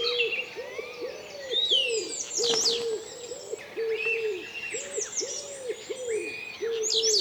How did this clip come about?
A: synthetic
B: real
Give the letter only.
B